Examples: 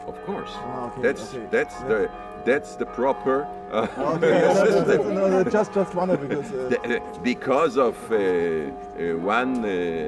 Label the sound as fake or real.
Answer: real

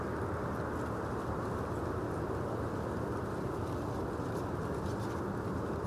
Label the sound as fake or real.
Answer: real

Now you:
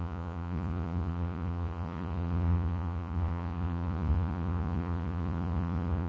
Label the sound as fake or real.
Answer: fake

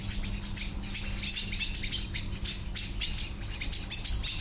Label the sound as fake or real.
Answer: real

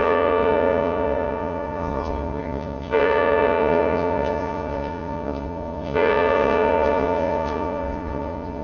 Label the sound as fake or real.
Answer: fake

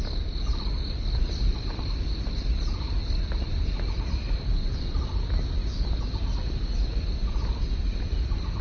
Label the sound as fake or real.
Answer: real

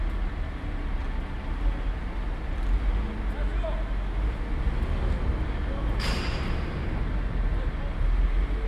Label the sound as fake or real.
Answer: real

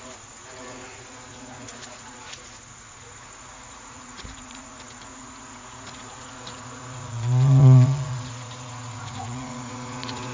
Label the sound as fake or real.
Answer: fake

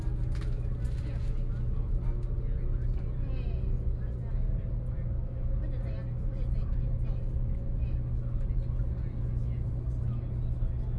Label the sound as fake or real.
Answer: real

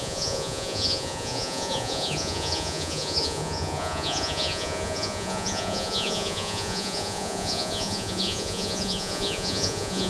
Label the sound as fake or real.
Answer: fake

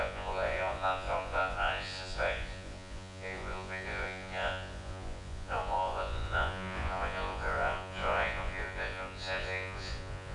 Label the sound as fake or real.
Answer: fake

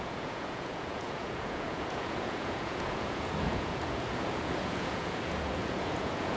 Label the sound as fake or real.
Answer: fake